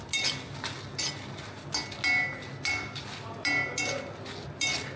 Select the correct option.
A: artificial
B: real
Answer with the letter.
B